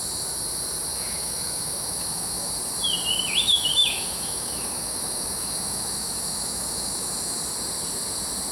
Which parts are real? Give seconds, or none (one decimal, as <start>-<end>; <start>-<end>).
0.0-0.9; 2.5-3.1; 7.4-8.5